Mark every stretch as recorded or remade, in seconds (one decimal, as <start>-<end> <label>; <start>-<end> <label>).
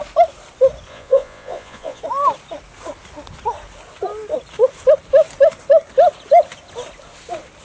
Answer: 0.0-0.9 recorded; 0.9-2.0 remade; 2.0-7.6 recorded